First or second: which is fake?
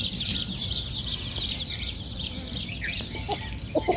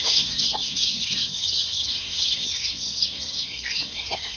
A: second